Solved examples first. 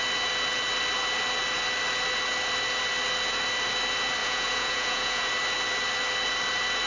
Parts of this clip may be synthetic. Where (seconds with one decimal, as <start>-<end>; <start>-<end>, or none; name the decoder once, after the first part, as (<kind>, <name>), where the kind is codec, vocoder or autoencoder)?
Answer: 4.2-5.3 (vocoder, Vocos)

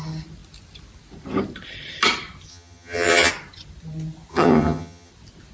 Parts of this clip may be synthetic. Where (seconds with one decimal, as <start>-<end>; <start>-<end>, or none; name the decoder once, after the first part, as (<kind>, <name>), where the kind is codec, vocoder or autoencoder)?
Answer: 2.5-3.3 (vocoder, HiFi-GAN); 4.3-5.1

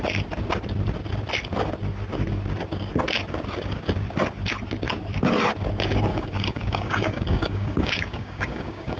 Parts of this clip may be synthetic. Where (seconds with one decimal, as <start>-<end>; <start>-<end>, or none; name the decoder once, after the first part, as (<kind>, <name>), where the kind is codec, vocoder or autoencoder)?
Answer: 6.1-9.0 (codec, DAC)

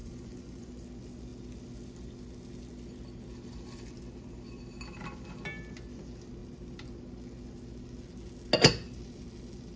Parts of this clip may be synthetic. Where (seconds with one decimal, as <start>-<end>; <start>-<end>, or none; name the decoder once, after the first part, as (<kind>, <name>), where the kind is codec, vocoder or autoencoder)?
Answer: 0.0-0.7 (vocoder, Vocos)

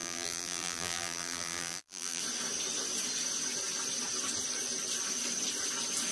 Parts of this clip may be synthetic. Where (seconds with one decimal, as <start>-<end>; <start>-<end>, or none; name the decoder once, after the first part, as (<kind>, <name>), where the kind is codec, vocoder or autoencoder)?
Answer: 0.0-2.2 (vocoder, BigVGAN v2)

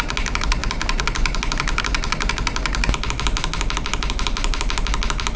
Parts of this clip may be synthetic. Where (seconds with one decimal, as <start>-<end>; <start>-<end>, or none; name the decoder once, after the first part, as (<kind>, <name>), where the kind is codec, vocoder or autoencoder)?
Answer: none